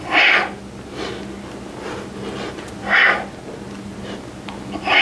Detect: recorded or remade recorded